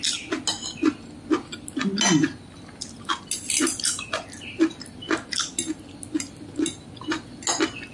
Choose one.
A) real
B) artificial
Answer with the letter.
A